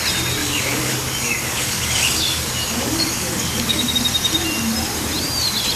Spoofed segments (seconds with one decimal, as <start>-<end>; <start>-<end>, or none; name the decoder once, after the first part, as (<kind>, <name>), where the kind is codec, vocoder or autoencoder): 0.4-3.9 (codec, DAC)